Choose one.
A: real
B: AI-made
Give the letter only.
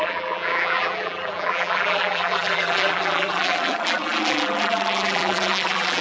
B